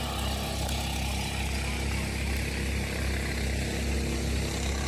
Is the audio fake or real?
real